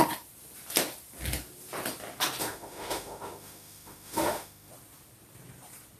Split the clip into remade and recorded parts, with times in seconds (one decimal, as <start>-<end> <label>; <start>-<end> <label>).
0.0-2.4 recorded; 2.4-4.7 remade; 4.7-6.0 recorded